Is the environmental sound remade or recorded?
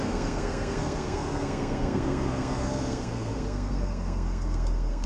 remade